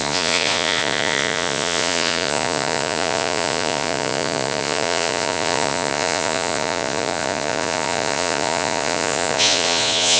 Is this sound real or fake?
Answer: fake